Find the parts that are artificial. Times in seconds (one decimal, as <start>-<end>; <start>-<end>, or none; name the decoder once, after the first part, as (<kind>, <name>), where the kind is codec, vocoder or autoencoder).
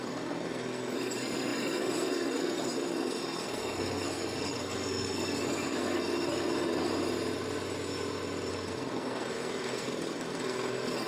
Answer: 0.0-6.9 (codec, SNAC); 8.5-11.1